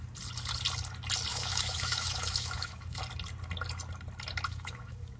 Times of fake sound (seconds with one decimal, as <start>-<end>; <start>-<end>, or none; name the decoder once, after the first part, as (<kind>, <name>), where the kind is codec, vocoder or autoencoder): 1.3-3.0 (autoencoder, DAC-VAE); 4.5-5.2

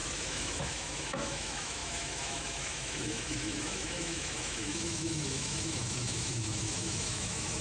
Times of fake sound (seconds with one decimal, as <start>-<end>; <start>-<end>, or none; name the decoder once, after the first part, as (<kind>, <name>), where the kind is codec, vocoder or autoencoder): 0.0-7.6 (autoencoder, DAC-VAE)

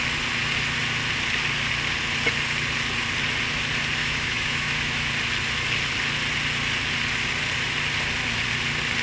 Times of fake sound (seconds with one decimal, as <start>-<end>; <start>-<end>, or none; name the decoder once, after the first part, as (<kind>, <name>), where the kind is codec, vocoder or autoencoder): 4.0-5.1 (autoencoder, DAC-VAE)

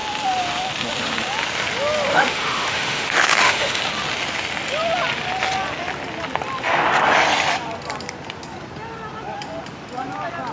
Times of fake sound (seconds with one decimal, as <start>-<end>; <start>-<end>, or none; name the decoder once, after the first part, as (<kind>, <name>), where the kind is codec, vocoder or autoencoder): 2.1-3.8 (autoencoder, DAC-VAE)

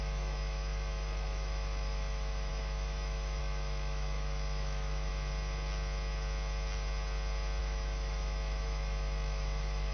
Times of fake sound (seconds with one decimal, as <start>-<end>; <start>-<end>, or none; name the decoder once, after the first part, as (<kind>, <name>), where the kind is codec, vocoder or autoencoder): 0.0-5.1 (autoencoder, DAC-VAE); 7.6-9.9